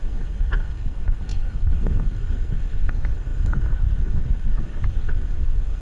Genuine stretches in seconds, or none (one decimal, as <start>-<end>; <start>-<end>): none